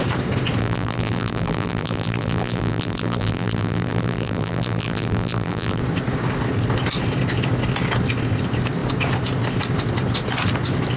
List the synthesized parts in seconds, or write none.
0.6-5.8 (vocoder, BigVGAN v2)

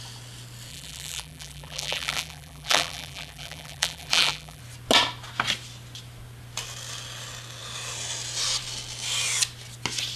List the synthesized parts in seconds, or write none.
0.7-4.6 (vocoder, BigVGAN v2)

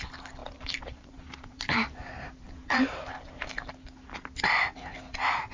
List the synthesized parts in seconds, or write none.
0.4-3.7 (vocoder, BigVGAN v2)

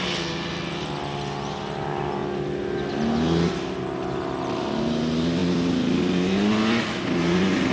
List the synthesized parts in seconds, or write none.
none

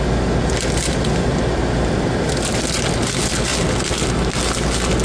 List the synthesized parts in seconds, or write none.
none

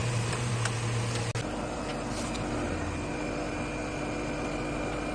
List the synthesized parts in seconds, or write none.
0.0-0.5 (vocoder, BigVGAN v2)